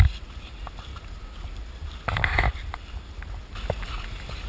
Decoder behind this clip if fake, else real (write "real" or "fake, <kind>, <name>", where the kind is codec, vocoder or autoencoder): real